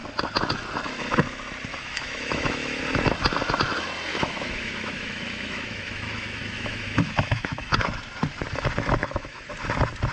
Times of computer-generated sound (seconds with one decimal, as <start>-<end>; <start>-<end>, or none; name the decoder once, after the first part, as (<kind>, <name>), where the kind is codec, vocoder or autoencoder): 1.7-2.8 (autoencoder, DAC-VAE); 4.1-7.7; 9.0-9.5